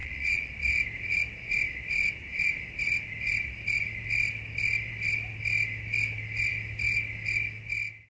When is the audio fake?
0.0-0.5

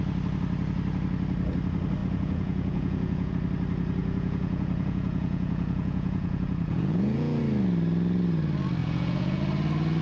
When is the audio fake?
2.0-3.3; 4.0-7.4; 8.8-9.4

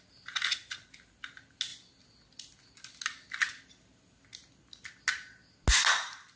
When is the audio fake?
none

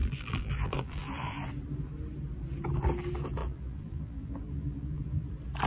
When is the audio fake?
0.0-1.5; 3.4-5.3

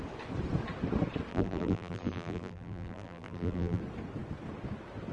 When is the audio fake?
1.3-3.8

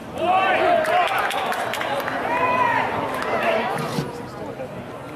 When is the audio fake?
none